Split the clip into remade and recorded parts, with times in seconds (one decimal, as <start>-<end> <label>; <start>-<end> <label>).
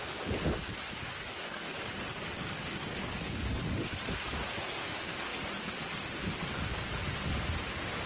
0.0-0.6 recorded; 0.6-4.0 remade; 4.0-8.1 recorded